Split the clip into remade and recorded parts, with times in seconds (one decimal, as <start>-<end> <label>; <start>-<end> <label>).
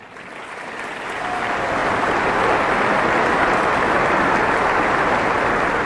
0.0-5.9 recorded